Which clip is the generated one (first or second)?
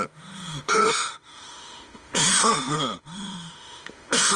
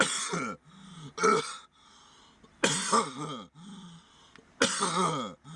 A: first